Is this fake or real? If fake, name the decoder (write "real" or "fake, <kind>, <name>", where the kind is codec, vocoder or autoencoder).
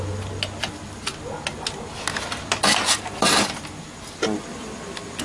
real